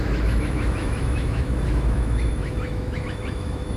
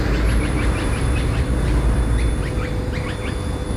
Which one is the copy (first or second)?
first